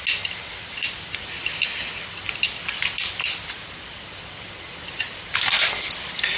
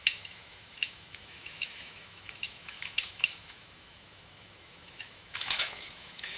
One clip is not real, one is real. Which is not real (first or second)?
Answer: second